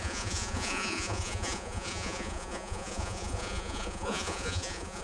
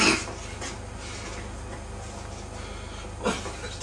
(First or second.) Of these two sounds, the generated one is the first